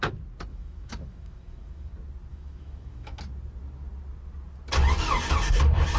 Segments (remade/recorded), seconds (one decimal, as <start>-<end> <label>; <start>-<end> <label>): 0.0-0.5 recorded; 0.5-1.9 remade; 1.9-2.3 recorded; 2.3-3.2 remade; 3.2-6.0 recorded